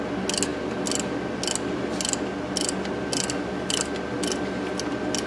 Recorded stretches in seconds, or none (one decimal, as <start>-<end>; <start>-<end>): 0.0-5.3